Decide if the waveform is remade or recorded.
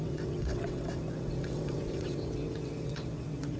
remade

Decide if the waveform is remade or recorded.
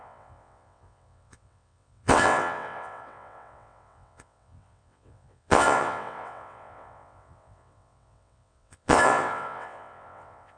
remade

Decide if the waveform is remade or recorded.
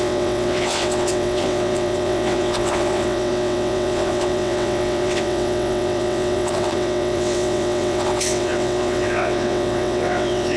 remade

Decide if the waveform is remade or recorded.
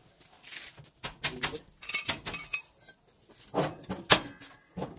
recorded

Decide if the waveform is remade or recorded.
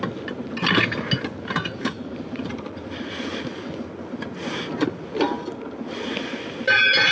recorded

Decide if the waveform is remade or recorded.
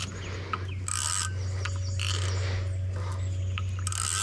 recorded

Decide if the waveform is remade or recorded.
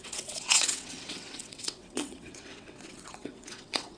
remade